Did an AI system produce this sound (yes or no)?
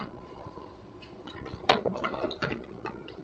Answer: yes